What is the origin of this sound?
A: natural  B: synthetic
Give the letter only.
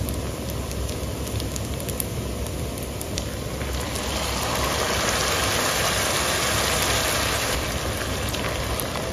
A